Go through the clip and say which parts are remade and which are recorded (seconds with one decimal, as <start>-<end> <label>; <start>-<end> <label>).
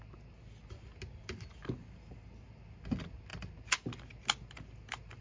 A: 0.0-5.2 recorded